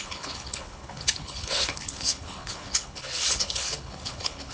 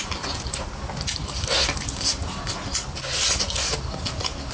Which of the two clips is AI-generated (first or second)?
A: first